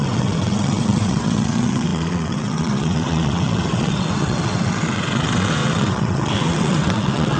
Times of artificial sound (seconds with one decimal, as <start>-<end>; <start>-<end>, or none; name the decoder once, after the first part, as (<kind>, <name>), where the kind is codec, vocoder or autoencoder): 0.0-7.4 (vocoder, WaveNeXt)